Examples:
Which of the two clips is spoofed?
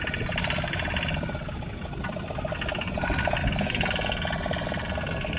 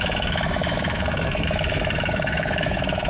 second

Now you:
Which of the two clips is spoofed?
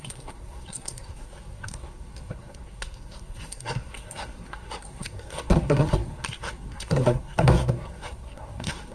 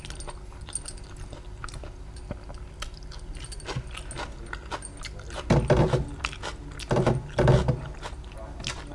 first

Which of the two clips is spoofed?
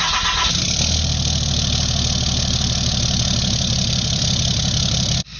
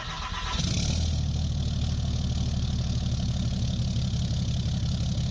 first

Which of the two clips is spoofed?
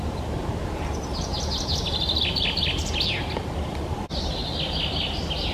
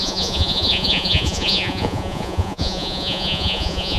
second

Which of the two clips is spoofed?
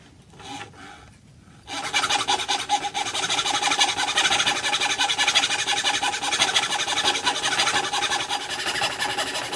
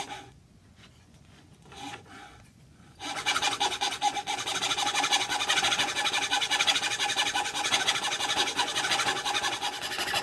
second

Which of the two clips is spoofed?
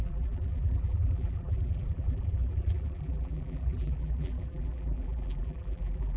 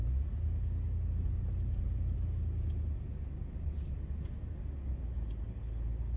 first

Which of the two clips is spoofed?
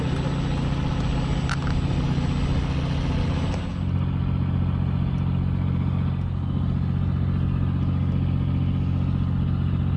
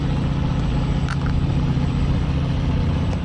second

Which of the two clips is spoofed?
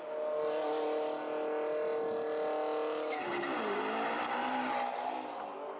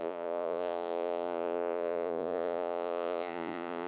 second